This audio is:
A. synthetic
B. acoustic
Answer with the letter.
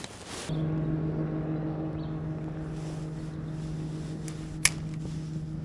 B